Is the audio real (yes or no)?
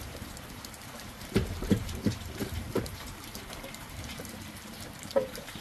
no